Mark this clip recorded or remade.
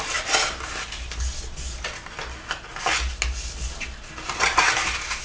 recorded